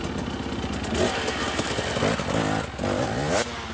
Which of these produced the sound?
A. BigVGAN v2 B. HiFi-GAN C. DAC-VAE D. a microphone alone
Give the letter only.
D